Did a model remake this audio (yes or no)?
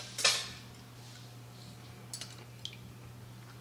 no